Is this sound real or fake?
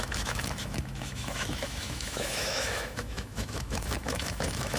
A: fake